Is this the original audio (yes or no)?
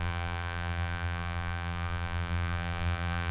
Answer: no